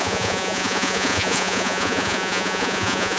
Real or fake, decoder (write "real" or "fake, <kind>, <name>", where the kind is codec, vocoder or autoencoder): fake, vocoder, Vocos